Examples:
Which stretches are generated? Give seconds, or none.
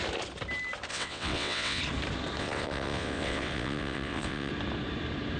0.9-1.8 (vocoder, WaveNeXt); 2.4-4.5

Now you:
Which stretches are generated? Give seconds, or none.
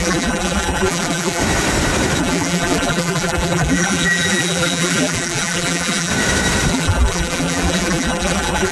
0.0-1.4 (vocoder, BigVGAN v2); 2.2-6.1; 6.7-8.7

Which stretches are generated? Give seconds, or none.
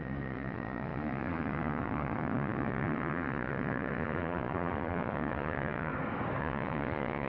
0.0-5.9 (vocoder, Vocos); 6.4-7.3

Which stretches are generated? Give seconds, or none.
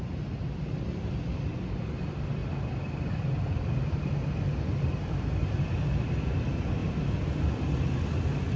none